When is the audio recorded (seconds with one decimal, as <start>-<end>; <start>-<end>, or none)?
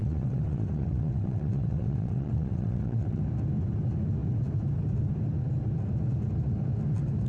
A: 3.2-7.3